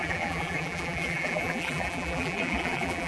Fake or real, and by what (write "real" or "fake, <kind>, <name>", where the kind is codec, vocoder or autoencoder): fake, vocoder, BigVGAN v2